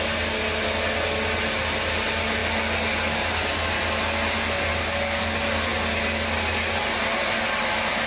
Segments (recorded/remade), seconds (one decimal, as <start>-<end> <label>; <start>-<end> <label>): 0.0-4.7 recorded; 4.7-5.3 remade; 5.3-8.1 recorded

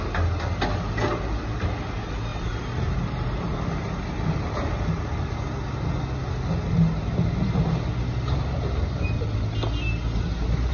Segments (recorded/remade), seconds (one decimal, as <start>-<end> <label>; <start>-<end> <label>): 0.0-2.3 recorded; 2.3-3.9 remade; 3.9-10.7 recorded

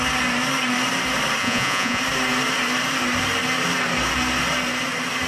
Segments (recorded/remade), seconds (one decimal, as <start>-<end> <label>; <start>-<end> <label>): 0.0-1.4 recorded; 1.4-2.0 remade; 2.0-5.3 recorded